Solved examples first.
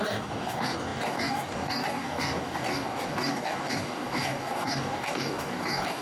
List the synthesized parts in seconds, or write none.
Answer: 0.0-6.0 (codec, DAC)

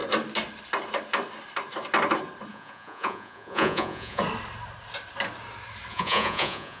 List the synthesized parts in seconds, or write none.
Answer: 2.5-4.2 (vocoder, Vocos); 5.9-6.8

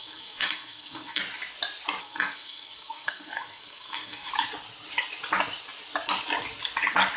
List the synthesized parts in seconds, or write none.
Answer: 0.0-1.2 (codec, SNAC); 2.0-4.3

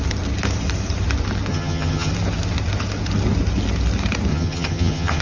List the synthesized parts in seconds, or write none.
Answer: 1.5-2.1 (vocoder, HiFi-GAN); 4.3-5.2

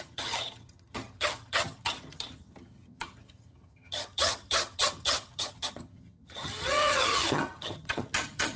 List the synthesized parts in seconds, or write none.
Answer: 0.0-8.6 (vocoder, HiFi-GAN)

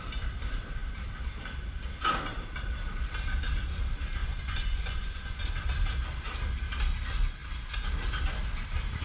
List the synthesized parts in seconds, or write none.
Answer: 4.2-5.4 (vocoder, Vocos)